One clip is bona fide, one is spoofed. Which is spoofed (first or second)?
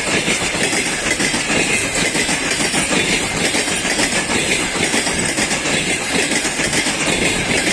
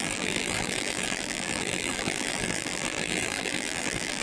second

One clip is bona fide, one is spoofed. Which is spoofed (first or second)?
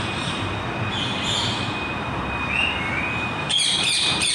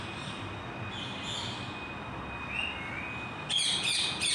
first